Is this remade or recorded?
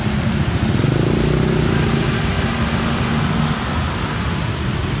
recorded